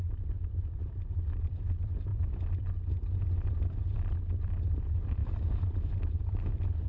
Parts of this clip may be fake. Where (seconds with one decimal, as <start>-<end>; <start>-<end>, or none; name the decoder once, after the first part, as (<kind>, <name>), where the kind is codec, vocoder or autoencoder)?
none

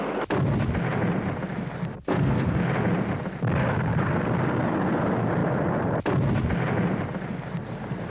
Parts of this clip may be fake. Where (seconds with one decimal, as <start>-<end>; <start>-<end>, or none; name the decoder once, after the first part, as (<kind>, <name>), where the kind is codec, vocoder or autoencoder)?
2.1-2.6 (codec, SNAC)

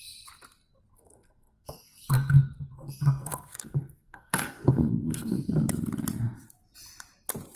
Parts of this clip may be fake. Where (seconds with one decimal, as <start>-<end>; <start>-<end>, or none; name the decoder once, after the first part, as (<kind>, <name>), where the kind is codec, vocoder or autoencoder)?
0.9-5.5 (codec, SNAC)

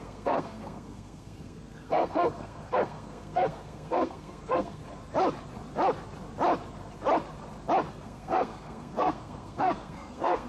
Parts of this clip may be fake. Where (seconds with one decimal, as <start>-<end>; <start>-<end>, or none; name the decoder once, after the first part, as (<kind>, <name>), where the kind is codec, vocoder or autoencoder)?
0.0-4.8 (codec, SNAC); 7.9-10.5

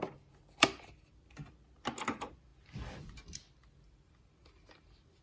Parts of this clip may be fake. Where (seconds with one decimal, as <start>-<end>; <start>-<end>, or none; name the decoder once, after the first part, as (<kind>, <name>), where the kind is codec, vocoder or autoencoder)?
none

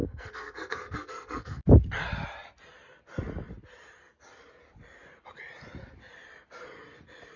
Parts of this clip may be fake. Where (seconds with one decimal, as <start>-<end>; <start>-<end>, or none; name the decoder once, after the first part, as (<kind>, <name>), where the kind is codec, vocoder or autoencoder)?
0.0-1.6 (codec, SNAC)

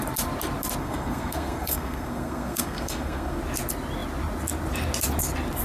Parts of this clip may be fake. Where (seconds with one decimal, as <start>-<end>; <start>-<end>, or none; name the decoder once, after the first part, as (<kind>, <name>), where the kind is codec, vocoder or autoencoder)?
0.8-3.4 (codec, SNAC)

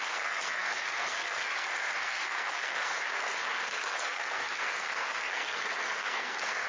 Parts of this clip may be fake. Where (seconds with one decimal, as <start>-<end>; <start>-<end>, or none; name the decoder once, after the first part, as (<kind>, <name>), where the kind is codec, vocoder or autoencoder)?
0.0-6.7 (codec, SNAC)